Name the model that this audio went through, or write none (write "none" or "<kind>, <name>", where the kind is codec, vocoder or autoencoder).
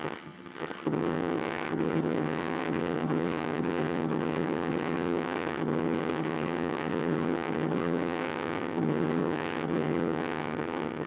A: vocoder, HiFi-GAN